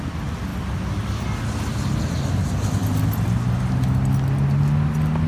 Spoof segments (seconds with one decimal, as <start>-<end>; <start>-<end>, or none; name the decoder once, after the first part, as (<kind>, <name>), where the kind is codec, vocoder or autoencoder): none